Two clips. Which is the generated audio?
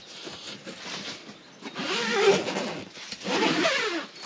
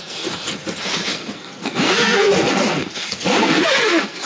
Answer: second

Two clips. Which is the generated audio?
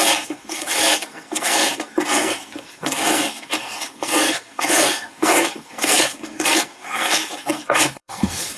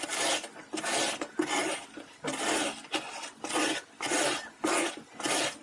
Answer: first